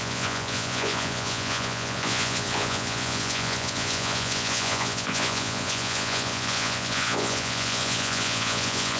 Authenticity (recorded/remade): remade